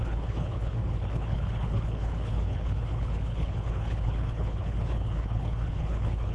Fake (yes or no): yes